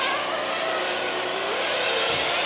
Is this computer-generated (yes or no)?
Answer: no